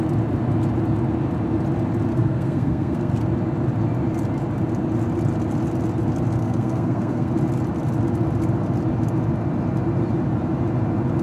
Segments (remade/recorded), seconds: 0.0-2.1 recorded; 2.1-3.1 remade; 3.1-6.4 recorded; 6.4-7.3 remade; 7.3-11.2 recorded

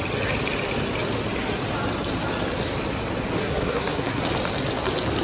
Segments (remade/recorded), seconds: 0.0-3.4 recorded; 3.4-4.2 remade; 4.2-5.2 recorded

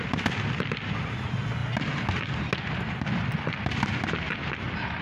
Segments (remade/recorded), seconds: 0.0-5.0 recorded

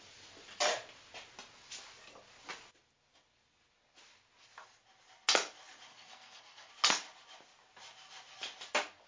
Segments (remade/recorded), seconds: 0.0-5.9 recorded; 5.9-6.7 remade; 6.7-9.1 recorded

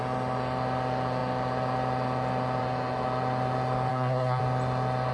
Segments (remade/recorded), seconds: 0.0-3.9 recorded; 3.9-4.4 remade; 4.4-5.1 recorded

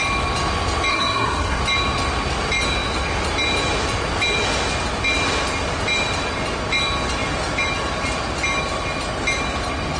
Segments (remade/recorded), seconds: 0.0-0.9 recorded; 0.9-1.6 remade; 1.6-10.0 recorded

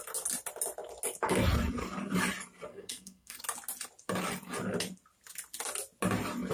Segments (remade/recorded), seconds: 0.0-2.7 recorded; 2.7-3.4 remade; 3.4-6.5 recorded